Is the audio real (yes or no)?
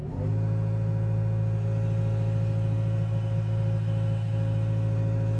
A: yes